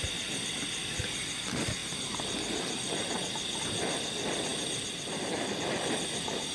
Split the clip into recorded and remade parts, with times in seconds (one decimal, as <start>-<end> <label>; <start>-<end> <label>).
0.0-6.5 recorded